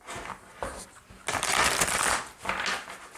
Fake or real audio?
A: real